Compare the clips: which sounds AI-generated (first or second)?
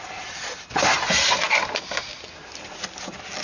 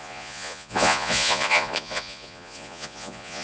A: second